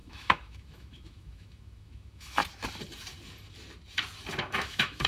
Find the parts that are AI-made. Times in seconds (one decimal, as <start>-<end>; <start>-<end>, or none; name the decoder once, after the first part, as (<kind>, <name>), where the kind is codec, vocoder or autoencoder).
0.0-2.4 (autoencoder, DAC-VAE); 4.4-5.1